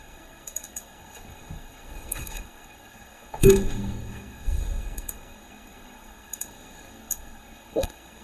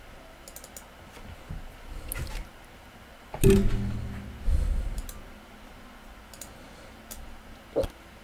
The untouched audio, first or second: second